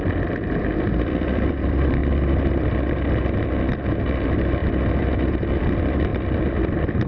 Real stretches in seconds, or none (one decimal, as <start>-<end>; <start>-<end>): 2.0-3.4